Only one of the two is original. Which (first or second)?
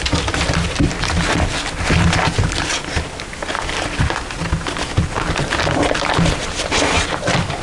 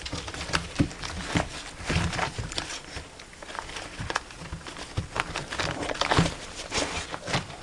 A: first